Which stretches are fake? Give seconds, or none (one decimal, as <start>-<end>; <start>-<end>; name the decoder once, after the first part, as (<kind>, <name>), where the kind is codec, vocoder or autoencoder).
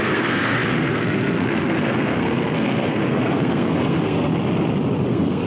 0.0-4.3 (codec, SNAC); 5.1-5.5